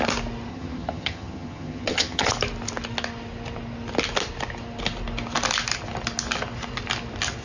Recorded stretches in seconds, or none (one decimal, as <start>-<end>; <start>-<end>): 0.0-0.5; 2.3-7.4